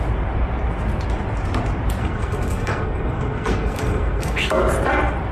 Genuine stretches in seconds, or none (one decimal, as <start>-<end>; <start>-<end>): 0.0-2.0; 4.6-5.3